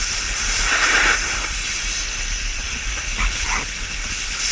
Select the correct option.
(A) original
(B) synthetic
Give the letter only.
B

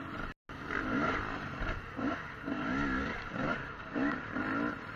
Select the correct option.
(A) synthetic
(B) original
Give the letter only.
B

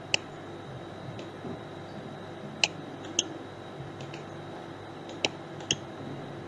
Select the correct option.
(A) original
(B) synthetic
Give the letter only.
A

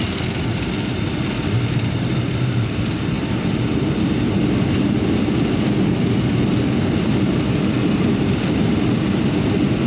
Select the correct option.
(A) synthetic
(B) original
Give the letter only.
B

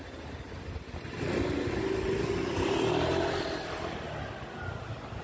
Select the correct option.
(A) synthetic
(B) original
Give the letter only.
B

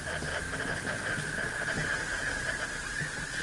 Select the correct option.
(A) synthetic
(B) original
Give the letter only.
B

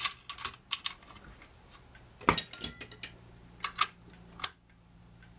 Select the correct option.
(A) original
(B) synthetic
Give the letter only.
A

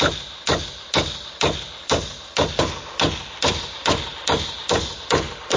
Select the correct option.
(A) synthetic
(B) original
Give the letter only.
B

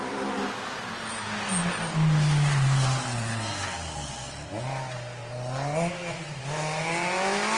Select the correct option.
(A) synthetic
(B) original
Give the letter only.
B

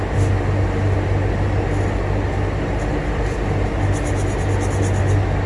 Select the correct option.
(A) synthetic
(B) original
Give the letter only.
B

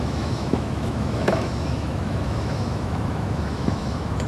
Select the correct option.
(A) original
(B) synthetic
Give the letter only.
B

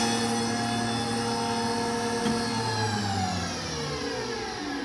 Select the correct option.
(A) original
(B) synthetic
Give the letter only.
A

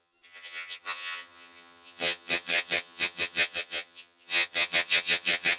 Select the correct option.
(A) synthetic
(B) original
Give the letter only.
A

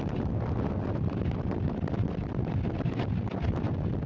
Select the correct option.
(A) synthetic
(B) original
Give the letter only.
B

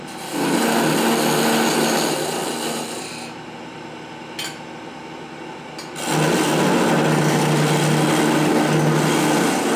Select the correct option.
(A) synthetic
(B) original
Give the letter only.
B